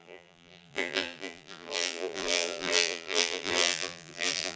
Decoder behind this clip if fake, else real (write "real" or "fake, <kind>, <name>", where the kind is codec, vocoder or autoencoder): fake, vocoder, BigVGAN v2